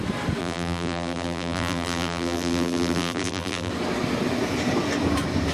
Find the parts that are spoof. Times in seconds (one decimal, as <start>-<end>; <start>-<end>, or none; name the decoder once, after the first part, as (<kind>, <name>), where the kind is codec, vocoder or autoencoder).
0.4-3.7 (vocoder, BigVGAN v2)